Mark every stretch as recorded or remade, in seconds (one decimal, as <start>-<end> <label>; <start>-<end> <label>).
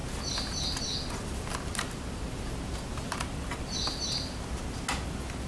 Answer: 0.0-5.5 recorded